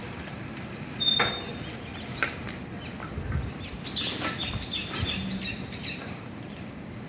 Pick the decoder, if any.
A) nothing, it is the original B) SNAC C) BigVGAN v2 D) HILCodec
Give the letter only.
C